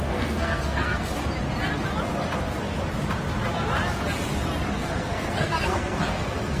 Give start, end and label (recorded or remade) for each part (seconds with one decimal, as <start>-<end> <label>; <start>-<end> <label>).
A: 0.0-1.1 remade; 1.1-4.8 recorded; 4.8-6.6 remade